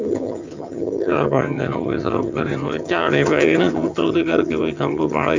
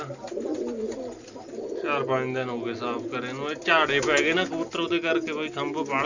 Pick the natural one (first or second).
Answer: second